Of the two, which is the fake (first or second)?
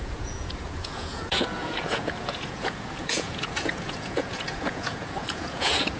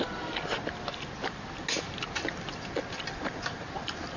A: first